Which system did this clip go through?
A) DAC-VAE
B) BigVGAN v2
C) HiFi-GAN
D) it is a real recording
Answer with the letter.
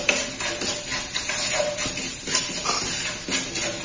D